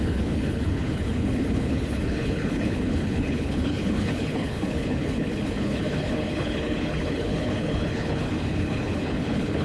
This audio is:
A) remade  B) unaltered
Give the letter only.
A